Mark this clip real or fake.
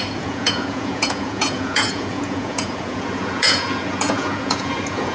fake